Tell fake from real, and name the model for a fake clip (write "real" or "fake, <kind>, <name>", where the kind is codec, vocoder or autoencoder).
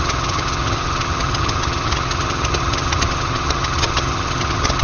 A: fake, vocoder, HiFi-GAN